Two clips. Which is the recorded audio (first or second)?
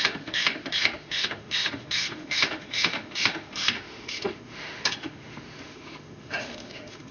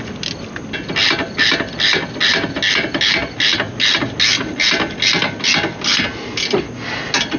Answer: second